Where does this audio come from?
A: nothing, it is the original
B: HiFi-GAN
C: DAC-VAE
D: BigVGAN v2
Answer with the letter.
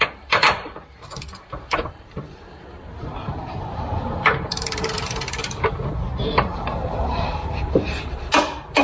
D